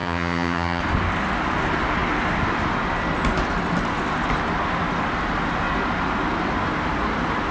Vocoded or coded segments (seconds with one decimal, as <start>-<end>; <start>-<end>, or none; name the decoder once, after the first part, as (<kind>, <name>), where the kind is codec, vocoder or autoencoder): 0.0-0.8 (vocoder, HiFi-GAN)